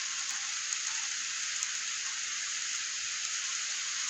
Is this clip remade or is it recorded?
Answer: recorded